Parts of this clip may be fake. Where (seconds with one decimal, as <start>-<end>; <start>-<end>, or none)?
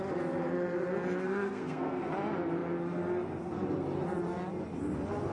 1.2-2.1